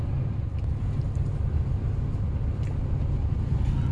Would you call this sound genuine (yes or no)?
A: yes